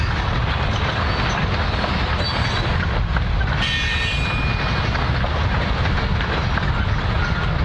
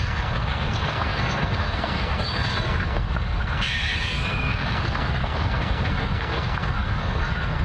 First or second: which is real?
first